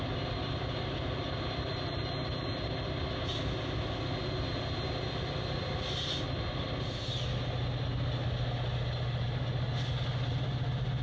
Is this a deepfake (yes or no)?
no